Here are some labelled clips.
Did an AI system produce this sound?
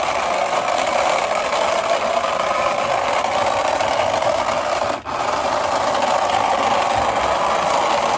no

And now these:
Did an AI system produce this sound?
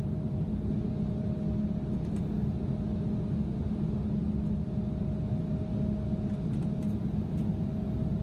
no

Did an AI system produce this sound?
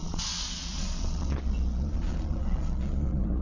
yes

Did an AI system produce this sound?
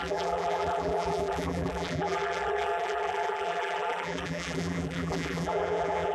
yes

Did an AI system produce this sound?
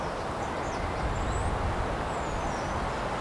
no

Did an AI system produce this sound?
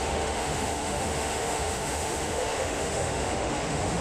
yes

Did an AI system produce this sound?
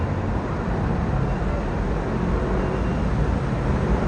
no